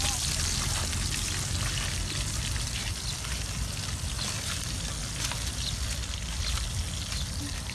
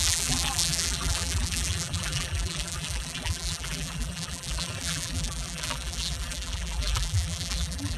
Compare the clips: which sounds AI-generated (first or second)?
second